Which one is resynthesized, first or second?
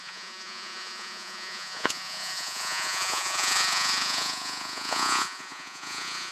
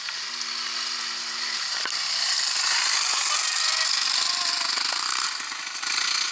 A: first